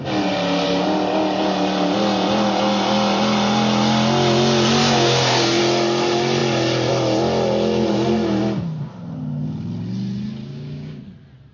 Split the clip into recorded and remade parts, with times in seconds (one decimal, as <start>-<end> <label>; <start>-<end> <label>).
0.0-4.8 recorded; 4.8-5.6 remade; 5.6-10.5 recorded; 10.5-11.0 remade; 11.0-11.5 recorded